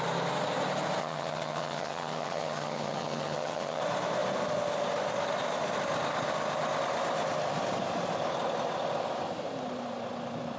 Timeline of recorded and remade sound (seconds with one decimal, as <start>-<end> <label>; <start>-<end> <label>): 0.0-1.0 recorded; 1.0-3.8 remade; 3.8-10.6 recorded